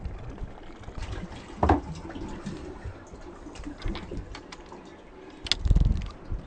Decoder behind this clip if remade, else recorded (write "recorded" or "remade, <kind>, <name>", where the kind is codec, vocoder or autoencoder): recorded